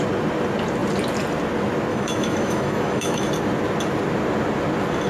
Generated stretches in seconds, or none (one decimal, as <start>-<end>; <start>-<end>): 1.9-3.3